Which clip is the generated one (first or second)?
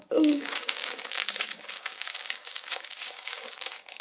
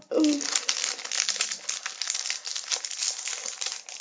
first